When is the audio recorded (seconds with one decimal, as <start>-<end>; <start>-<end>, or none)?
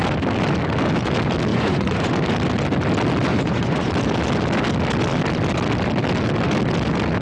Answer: 0.0-1.5; 2.1-3.3; 3.9-7.2